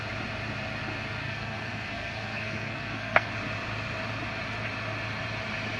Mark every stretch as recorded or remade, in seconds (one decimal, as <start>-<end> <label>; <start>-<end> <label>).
0.0-1.2 recorded; 1.2-3.3 remade; 3.3-5.8 recorded